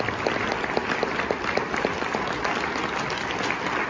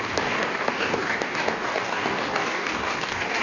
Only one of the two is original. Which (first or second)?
first